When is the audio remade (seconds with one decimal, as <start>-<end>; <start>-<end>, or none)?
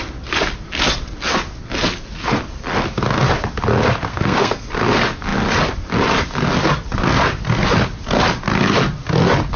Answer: 4.1-4.7